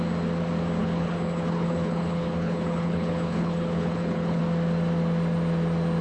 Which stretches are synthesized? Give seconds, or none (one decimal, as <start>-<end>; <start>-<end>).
0.8-4.4